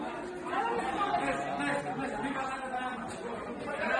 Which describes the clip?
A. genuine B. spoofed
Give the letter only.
A